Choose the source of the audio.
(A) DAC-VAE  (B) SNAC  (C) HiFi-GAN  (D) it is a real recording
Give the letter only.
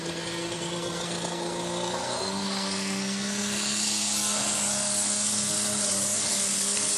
B